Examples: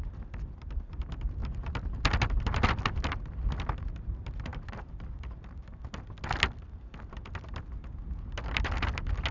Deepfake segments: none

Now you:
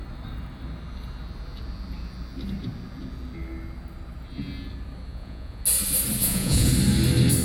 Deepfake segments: 5.1-5.6 (vocoder, Vocos); 6.2-6.7

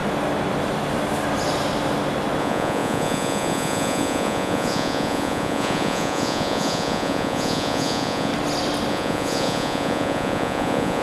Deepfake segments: 2.4-8.3 (vocoder, Vocos); 8.9-11.0

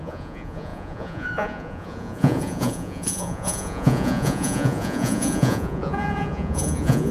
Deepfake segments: 0.0-7.1 (vocoder, Vocos)

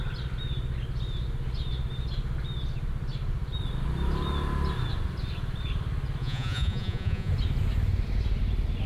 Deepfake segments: 6.2-7.3 (vocoder, Vocos)

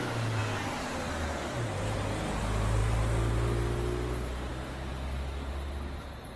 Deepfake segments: none

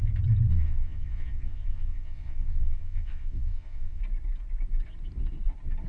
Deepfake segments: 0.5-4.0 (vocoder, Vocos)